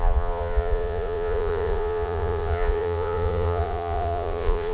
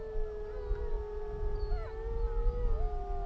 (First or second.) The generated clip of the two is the first